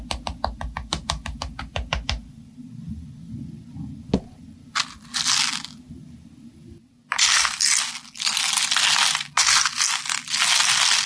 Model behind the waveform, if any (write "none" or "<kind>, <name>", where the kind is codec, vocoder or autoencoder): none